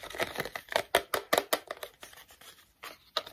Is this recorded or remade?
recorded